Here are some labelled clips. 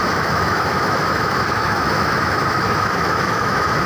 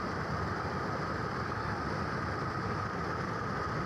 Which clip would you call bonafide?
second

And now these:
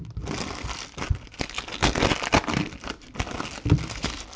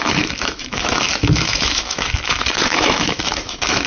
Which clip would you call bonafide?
first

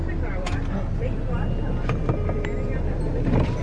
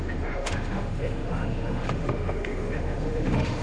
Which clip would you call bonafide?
first